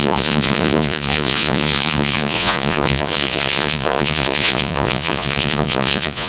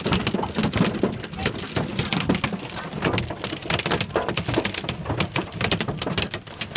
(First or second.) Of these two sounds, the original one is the second